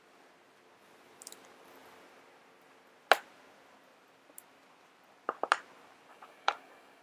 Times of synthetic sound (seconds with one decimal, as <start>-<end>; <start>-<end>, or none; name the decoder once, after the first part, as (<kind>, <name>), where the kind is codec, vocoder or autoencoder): 6.1-7.0 (codec, DAC)